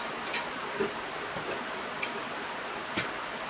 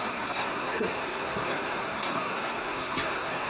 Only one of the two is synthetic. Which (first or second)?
second